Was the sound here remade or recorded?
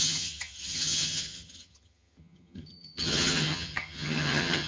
remade